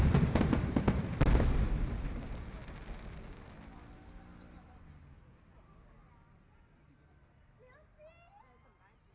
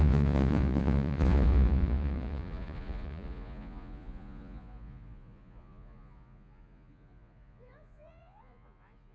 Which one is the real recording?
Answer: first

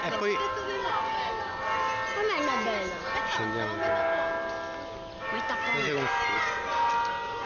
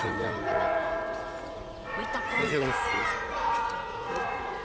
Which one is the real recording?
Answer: first